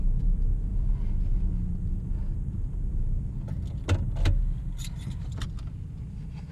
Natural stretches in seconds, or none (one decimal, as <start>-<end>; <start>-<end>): 0.0-6.5